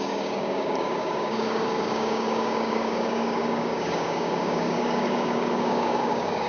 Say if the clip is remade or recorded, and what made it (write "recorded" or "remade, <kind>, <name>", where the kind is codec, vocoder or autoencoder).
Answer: remade, codec, DAC